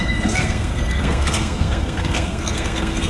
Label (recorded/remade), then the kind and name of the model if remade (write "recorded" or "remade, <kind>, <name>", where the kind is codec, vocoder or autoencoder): remade, codec, SNAC